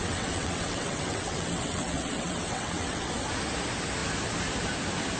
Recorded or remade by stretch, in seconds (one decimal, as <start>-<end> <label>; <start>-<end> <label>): 0.0-3.1 remade; 3.1-5.2 recorded